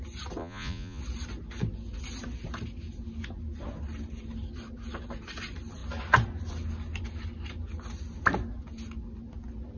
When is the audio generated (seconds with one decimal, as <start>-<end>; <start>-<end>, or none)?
0.4-1.0